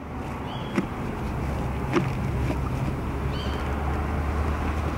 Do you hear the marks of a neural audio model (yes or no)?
no